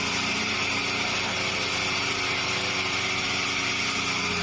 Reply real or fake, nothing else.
real